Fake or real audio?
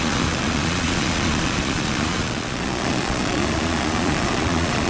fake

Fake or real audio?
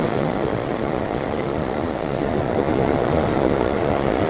fake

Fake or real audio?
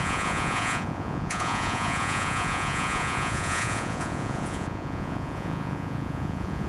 fake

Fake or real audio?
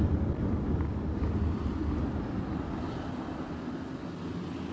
real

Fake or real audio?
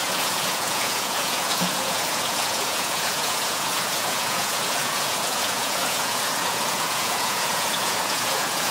fake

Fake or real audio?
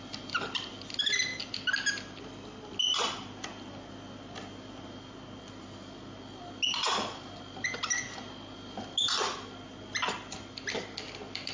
real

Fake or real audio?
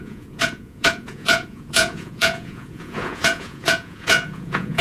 fake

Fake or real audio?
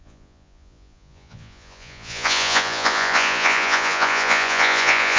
fake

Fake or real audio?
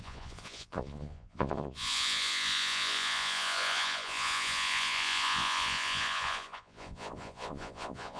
fake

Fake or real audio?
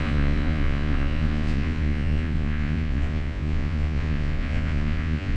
fake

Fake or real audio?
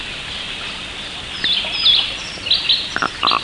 real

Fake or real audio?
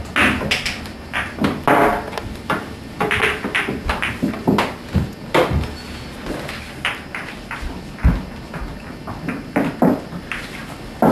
real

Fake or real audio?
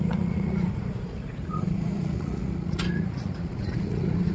fake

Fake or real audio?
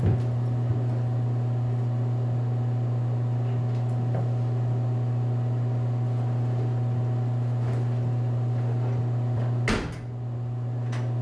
real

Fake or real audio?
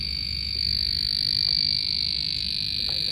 real